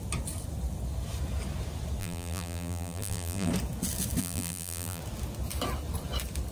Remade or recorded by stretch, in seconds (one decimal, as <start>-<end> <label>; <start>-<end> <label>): 0.0-2.0 recorded; 2.0-3.5 remade; 3.5-4.2 recorded; 4.2-5.0 remade; 5.0-6.5 recorded